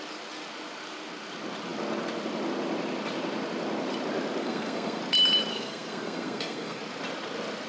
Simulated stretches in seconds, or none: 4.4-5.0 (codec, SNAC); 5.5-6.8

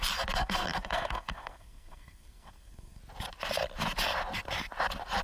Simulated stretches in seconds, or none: 0.4-3.0 (codec, SNAC)

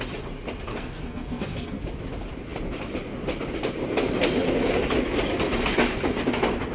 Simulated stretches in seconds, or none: 0.7-1.8 (codec, SNAC)